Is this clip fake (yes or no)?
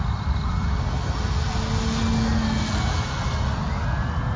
no